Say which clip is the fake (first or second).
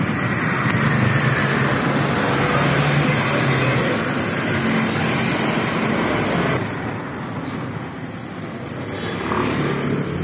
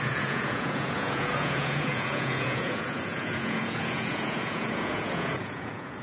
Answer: second